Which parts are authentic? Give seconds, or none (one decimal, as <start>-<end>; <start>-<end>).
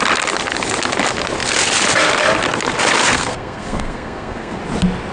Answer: 0.0-3.1; 4.6-5.1